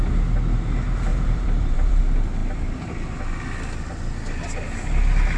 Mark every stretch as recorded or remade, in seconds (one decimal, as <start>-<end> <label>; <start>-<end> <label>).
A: 0.0-1.1 recorded; 1.1-2.0 remade; 2.0-5.4 recorded